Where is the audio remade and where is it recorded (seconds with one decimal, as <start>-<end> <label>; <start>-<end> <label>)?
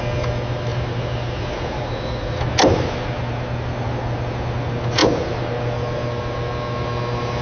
0.0-7.4 recorded